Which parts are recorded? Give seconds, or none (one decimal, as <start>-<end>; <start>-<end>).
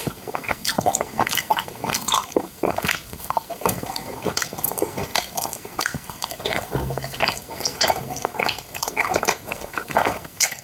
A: none